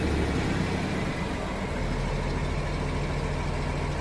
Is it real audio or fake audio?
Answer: real